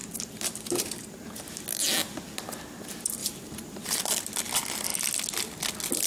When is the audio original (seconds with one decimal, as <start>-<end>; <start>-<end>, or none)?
1.6-3.2; 4.0-6.1